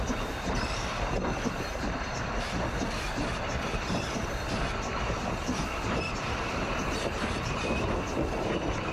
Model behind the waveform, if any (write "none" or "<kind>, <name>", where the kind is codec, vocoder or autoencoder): vocoder, BigVGAN v2